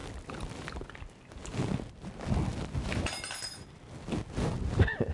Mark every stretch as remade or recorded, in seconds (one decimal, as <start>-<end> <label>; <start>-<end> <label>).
0.0-5.1 recorded